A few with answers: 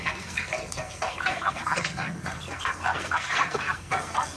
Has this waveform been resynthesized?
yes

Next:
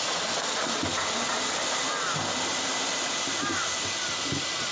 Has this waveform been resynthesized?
no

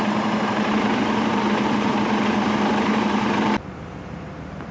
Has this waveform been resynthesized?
yes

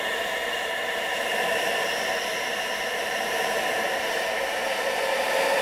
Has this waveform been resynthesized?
yes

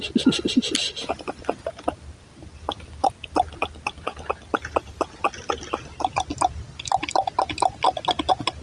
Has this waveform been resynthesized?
no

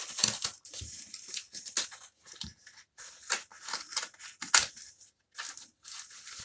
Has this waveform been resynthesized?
no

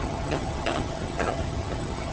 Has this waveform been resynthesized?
yes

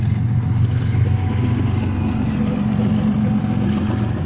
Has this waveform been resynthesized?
no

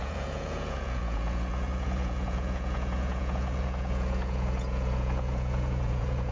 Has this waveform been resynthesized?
yes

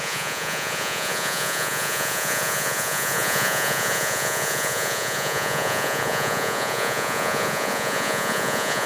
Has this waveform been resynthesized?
yes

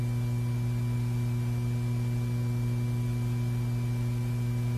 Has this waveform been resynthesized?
no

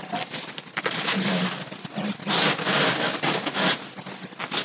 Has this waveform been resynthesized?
no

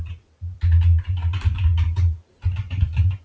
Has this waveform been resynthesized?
yes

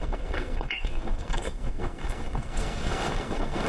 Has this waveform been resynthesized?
yes